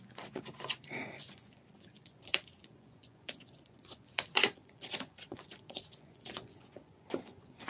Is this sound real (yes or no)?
no